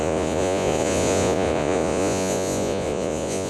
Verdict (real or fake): fake